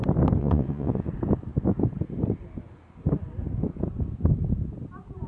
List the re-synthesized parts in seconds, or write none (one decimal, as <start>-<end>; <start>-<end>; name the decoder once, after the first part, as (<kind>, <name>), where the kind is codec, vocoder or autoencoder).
0.4-1.1 (vocoder, Vocos)